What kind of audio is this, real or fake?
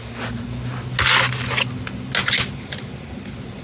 real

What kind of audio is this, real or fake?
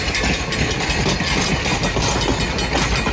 real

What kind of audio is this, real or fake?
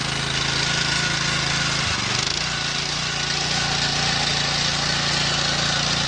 real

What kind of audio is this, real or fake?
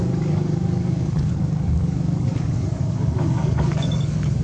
fake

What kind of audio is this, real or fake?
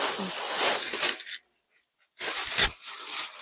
real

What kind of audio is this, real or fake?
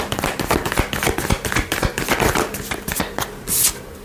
real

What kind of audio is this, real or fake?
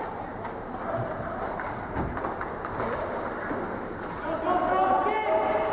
real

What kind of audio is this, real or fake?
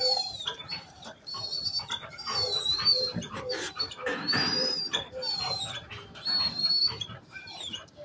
fake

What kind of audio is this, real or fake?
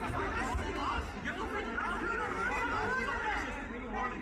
real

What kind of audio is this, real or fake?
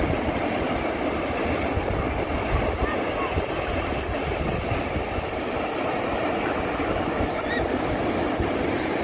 real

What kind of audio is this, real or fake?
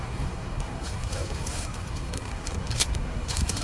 fake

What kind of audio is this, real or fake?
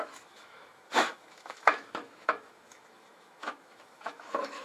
fake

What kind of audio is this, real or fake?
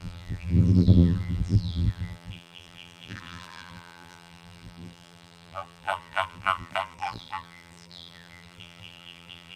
fake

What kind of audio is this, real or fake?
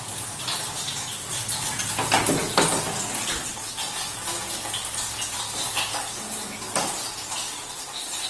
real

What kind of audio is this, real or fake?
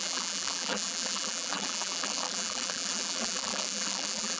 fake